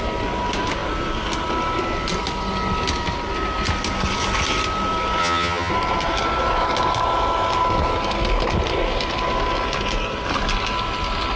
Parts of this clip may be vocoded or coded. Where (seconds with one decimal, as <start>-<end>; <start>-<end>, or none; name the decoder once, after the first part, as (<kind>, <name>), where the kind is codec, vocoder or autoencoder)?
5.2-5.7 (vocoder, HiFi-GAN)